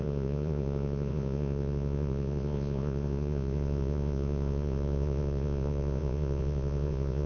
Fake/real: fake